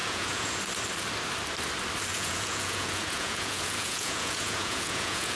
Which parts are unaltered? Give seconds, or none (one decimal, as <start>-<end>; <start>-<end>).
0.6-2.1

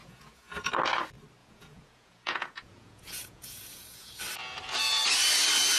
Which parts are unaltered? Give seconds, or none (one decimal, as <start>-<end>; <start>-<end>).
0.7-1.4; 4.2-5.8